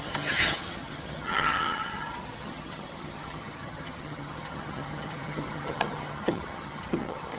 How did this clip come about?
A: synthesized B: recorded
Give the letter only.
A